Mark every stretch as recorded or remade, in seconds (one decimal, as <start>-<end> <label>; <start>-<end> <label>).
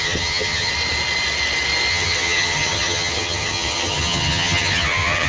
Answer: 0.0-0.7 remade; 0.7-1.9 recorded; 1.9-5.3 remade